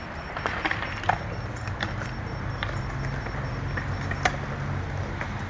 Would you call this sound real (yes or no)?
yes